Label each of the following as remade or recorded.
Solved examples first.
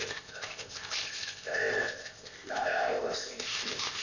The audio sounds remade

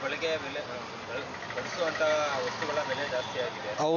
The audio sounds recorded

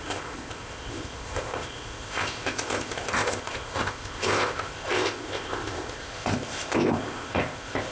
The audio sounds remade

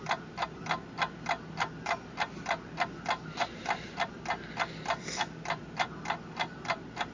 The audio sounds recorded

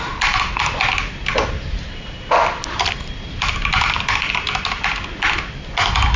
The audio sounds recorded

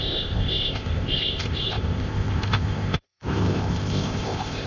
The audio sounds remade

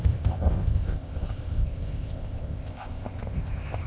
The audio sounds remade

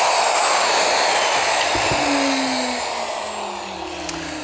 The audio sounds recorded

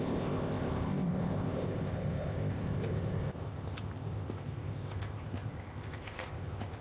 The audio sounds remade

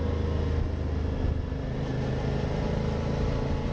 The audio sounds recorded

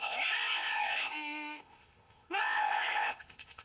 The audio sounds remade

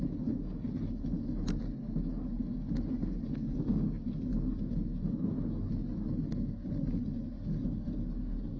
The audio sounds recorded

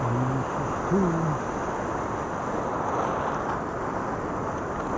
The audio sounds recorded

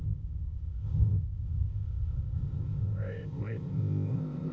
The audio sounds remade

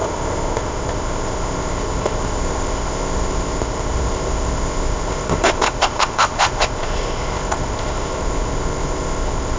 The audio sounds remade